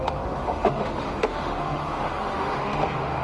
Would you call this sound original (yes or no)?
no